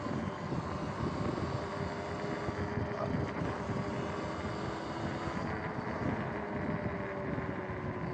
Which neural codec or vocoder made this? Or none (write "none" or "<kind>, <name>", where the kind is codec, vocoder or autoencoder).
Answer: none